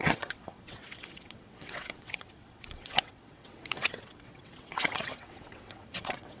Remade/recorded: remade